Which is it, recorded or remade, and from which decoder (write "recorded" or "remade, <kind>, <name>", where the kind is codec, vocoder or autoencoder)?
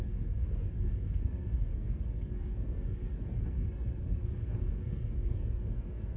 remade, codec, SNAC